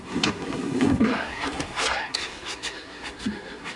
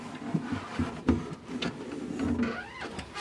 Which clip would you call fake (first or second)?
first